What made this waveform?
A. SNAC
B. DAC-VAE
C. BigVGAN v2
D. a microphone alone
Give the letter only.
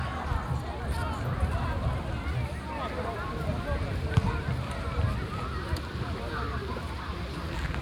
D